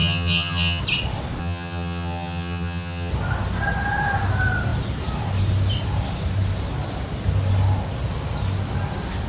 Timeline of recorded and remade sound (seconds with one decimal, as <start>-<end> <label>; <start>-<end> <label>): 0.0-0.8 remade; 0.8-1.4 recorded; 1.4-3.1 remade; 3.1-9.3 recorded